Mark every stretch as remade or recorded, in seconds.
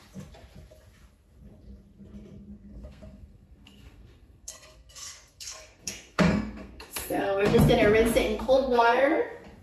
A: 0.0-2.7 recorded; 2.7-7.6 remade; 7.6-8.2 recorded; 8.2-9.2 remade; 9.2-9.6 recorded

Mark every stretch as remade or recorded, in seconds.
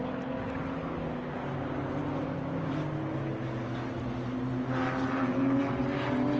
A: 0.0-6.4 recorded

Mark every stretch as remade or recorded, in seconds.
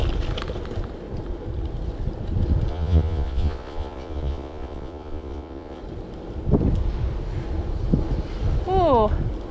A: 0.0-2.7 recorded; 2.7-5.8 remade; 5.8-9.5 recorded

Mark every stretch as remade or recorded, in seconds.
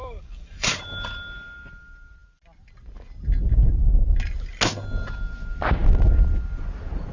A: 0.0-0.8 remade; 0.8-7.1 recorded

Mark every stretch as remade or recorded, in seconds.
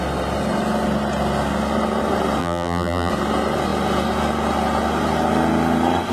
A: 0.0-2.4 recorded; 2.4-3.1 remade; 3.1-6.1 recorded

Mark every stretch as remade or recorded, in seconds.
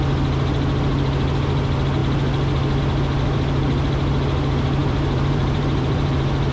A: 0.0-4.8 recorded; 4.8-6.1 remade; 6.1-6.5 recorded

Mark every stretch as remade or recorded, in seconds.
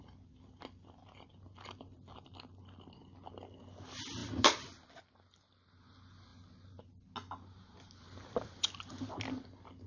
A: 0.0-9.9 recorded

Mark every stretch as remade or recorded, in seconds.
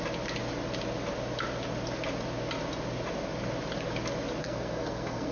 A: 0.0-4.4 recorded; 4.4-5.3 remade